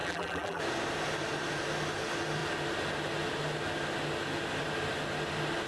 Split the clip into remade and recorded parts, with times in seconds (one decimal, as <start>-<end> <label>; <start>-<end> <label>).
0.0-0.6 remade; 0.6-5.7 recorded